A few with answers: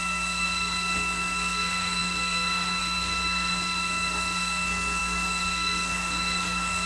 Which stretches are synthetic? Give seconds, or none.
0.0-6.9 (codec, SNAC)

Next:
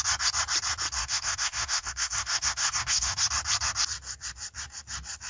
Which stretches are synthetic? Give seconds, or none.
1.0-3.2 (codec, SNAC)

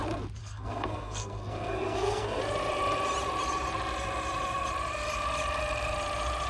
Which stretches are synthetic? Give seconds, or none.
0.4-2.4 (codec, SNAC)

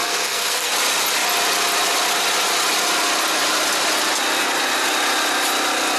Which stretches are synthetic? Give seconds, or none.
0.0-0.7 (codec, SNAC)

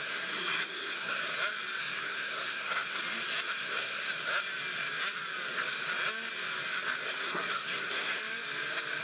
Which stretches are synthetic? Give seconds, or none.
0.0-1.2 (codec, SNAC); 1.8-3.0; 3.6-4.0; 7.2-8.2